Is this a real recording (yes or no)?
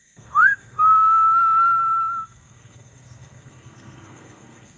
no